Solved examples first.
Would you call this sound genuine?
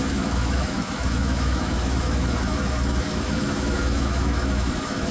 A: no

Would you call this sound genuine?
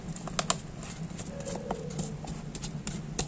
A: yes